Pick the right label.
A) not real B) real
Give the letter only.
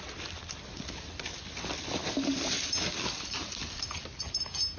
B